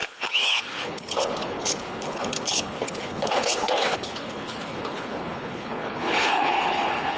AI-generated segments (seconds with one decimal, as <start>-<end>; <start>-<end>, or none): 0.0-7.2